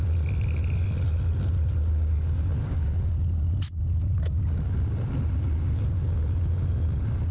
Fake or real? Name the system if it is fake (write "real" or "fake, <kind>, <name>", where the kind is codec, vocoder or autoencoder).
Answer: real